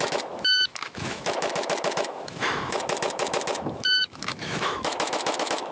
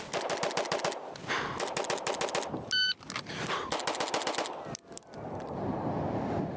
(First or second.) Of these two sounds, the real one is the second